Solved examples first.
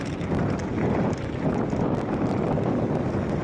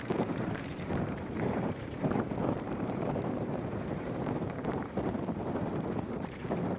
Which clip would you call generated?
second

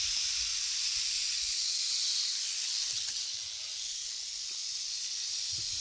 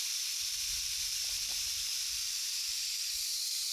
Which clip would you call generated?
second